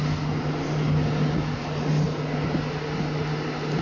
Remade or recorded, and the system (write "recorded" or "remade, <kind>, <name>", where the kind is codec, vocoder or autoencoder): recorded